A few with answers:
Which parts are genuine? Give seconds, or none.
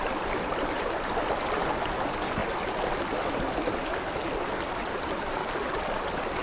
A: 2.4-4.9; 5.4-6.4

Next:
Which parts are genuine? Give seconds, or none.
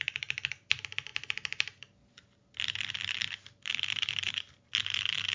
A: 0.0-5.3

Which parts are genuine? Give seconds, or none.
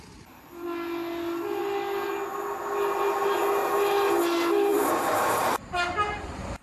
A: 0.0-4.7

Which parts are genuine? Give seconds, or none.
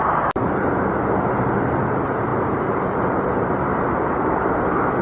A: 0.0-2.3; 3.6-5.0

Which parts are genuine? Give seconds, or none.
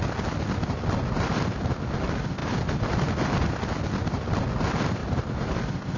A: 0.0-5.0; 5.6-6.0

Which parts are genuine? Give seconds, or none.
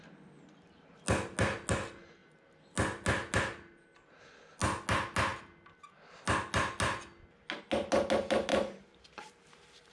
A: 0.0-8.5